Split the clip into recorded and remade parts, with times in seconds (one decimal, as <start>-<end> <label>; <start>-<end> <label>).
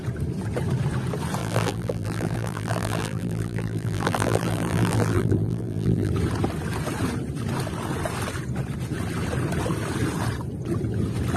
0.0-1.4 recorded; 1.4-6.1 remade; 6.1-11.4 recorded